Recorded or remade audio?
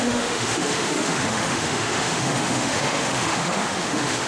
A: remade